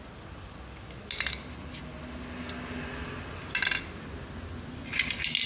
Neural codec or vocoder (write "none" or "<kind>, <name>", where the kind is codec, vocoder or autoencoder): none